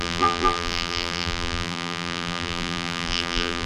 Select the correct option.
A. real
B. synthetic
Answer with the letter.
B